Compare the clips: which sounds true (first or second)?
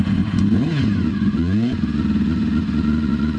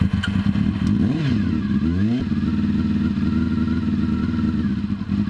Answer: second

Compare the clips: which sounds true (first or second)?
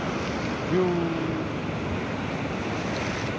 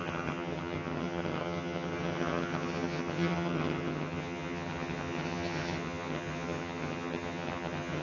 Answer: first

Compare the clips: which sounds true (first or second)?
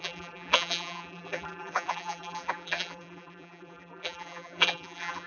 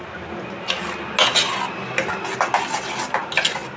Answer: second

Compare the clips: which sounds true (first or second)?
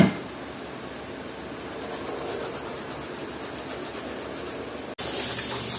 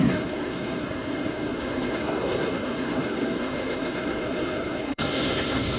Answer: first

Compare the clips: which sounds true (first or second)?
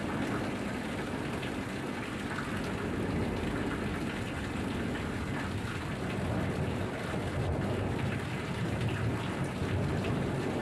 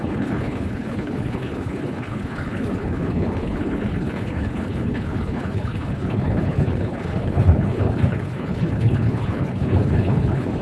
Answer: first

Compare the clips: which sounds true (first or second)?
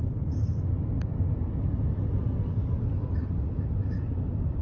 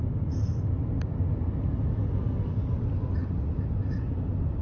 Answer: second